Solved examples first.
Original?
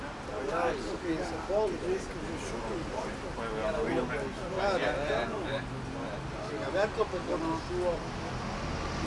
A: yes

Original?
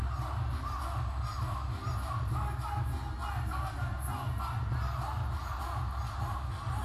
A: yes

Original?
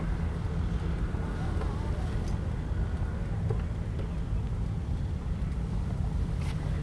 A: yes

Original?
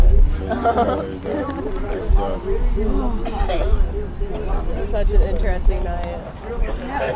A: yes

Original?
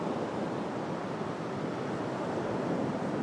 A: yes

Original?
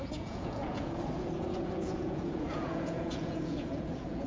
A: no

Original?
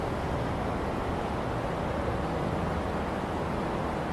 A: yes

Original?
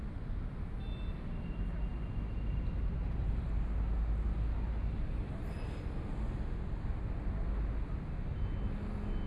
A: yes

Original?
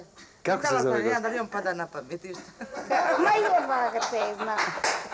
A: yes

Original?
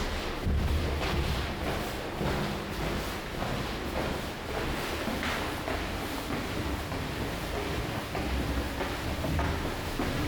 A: yes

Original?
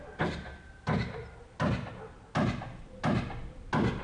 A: yes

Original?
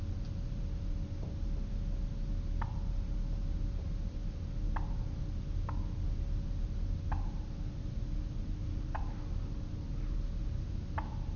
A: yes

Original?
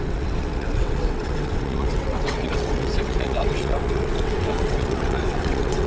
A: no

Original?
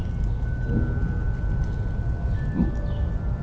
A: yes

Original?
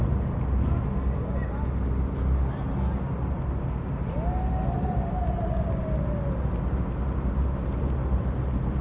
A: yes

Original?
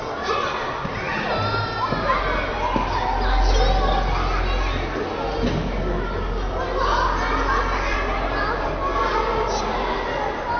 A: yes